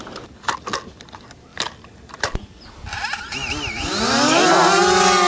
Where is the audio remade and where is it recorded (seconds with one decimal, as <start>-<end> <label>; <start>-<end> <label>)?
0.0-5.3 recorded